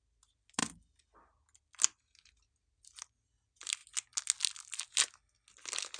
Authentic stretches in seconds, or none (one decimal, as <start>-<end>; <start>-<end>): 0.0-6.0